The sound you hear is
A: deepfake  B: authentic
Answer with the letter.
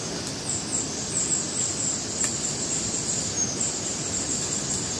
B